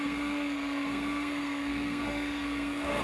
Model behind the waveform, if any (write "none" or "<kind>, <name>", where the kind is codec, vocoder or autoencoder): codec, SNAC